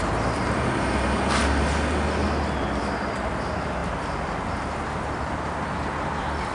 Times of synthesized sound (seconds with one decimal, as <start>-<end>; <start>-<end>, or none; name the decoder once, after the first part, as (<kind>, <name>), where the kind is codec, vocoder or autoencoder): none